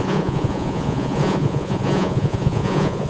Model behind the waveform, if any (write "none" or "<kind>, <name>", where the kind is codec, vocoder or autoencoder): vocoder, Vocos